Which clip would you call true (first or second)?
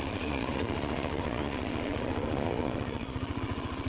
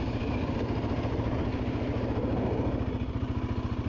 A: second